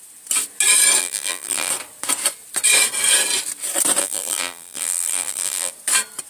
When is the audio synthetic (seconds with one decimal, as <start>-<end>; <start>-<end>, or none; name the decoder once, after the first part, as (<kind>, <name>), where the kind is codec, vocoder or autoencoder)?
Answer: 1.0-1.7 (vocoder, BigVGAN v2); 4.0-5.7